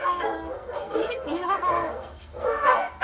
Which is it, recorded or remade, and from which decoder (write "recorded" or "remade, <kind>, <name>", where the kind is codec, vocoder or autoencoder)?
remade, codec, SNAC